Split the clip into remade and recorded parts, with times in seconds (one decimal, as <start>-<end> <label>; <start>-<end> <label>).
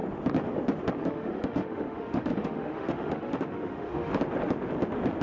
0.0-1.0 recorded; 1.0-4.1 remade; 4.1-5.2 recorded